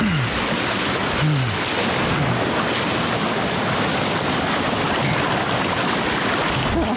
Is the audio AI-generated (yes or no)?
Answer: no